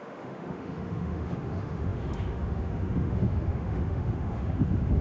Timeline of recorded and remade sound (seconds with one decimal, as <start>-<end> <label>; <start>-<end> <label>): 0.0-5.0 remade